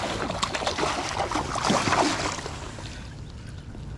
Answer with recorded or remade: recorded